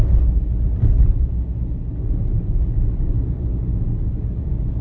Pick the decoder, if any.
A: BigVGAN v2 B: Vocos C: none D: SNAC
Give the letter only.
C